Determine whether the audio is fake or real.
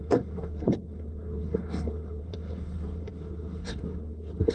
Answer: fake